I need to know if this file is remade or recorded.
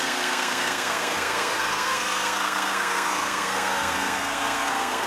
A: remade